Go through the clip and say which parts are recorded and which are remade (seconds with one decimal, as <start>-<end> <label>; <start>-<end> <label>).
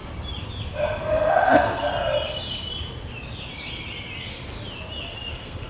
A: 0.0-1.0 recorded; 1.0-1.9 remade; 1.9-5.3 recorded; 5.3-5.7 remade